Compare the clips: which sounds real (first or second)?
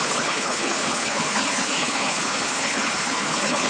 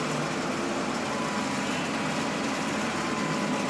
second